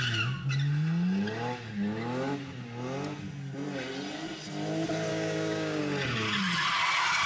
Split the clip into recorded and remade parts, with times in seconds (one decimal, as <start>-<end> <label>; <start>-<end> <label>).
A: 0.0-5.1 recorded; 5.1-5.8 remade; 5.8-7.3 recorded